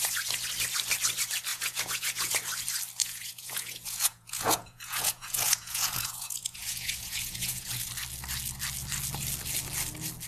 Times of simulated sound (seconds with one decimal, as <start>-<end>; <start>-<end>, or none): 1.5-2.3; 3.0-7.9

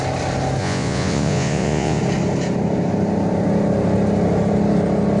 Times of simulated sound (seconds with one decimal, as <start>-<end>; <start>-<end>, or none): 0.6-2.0